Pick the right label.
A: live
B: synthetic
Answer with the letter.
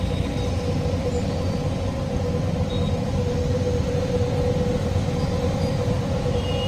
A